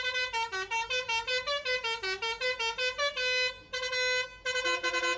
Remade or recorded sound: recorded